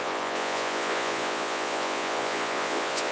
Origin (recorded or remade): remade